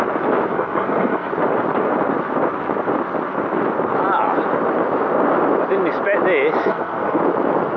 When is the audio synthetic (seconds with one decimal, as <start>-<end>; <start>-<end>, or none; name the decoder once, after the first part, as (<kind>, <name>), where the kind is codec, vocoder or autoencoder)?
0.5-1.3 (codec, SNAC); 6.6-7.2